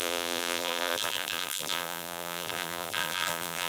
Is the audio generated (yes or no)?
yes